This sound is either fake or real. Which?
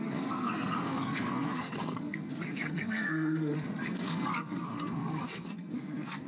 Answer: fake